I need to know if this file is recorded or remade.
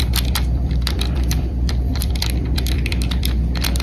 remade